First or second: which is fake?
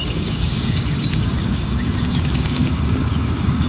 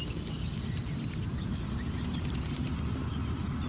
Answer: first